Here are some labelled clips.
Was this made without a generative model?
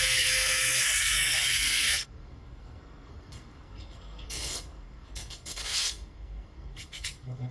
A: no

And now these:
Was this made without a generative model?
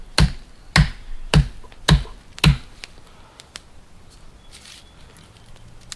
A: yes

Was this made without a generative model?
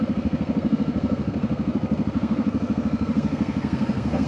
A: no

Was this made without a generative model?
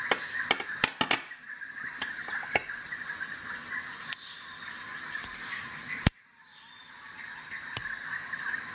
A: yes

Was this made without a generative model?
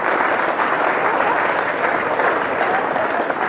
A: yes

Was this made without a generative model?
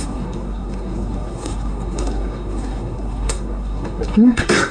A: no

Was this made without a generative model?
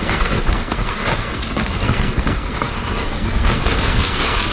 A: no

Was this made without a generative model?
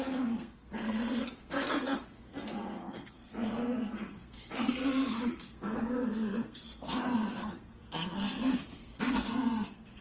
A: no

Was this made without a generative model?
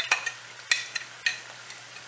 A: yes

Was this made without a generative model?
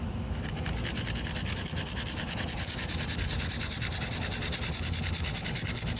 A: yes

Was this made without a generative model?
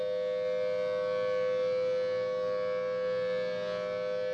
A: yes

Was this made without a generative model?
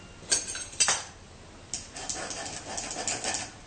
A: yes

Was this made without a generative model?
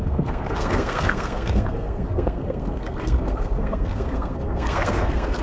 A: no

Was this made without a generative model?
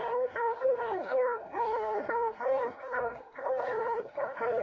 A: no